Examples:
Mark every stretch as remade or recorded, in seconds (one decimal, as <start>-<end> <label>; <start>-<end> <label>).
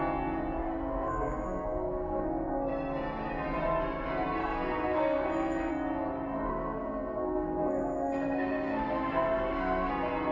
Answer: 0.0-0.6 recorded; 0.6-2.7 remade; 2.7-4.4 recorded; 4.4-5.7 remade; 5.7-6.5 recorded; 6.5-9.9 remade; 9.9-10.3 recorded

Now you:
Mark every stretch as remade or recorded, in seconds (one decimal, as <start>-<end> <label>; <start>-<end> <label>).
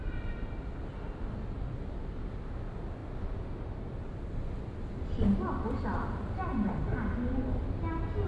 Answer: 0.0-8.3 recorded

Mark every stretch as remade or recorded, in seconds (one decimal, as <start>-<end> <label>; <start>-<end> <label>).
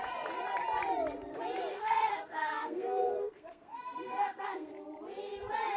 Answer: 0.0-1.7 recorded; 1.7-4.7 remade; 4.7-5.8 recorded